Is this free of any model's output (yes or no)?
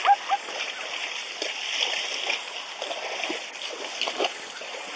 yes